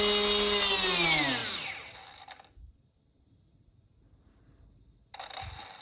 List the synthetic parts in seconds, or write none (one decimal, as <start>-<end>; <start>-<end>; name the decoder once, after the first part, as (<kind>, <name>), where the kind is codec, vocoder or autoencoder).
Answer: 1.4-3.2 (vocoder, BigVGAN v2)